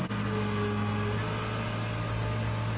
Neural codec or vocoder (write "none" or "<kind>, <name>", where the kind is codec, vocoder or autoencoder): none